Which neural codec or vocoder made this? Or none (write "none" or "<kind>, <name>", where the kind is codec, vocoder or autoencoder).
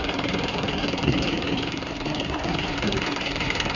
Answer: codec, SNAC